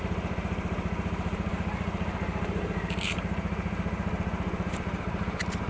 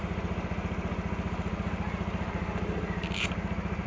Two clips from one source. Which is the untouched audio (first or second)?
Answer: second